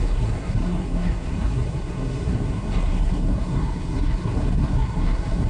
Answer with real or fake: fake